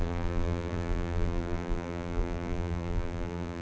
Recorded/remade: remade